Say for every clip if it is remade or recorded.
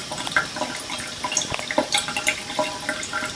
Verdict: recorded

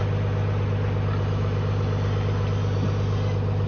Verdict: recorded